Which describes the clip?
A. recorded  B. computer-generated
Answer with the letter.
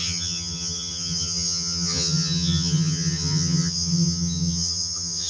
B